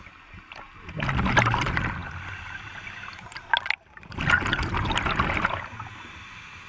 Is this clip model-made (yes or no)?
no